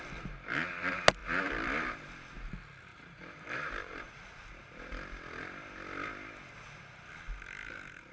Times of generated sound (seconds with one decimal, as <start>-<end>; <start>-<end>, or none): 2.9-4.2